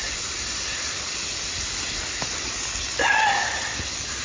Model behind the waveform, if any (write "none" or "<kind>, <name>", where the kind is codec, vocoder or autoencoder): none